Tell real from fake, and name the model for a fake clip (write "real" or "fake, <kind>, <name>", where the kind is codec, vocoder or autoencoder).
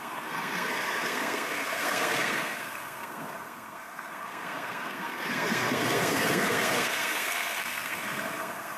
fake, codec, SNAC